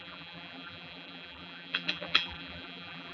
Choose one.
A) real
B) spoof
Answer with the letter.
B